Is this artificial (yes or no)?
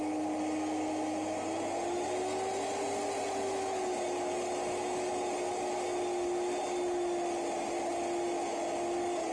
no